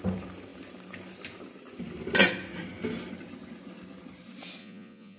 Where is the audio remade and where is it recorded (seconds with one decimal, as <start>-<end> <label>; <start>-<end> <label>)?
0.0-4.6 recorded; 4.6-5.2 remade